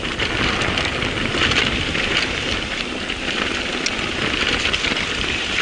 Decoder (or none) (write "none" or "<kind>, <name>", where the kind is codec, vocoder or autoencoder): none